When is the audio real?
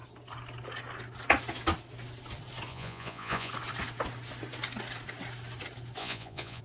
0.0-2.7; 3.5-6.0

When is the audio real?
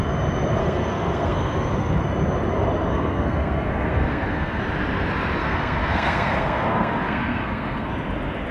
0.0-0.6; 2.0-2.9; 4.6-5.4; 7.9-8.5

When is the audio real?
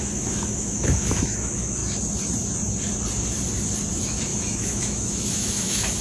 1.8-3.9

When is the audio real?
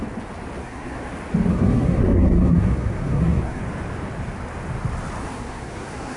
0.0-0.6; 1.1-1.5; 3.6-5.2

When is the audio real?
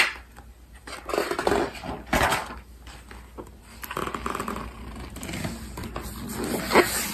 0.0-7.1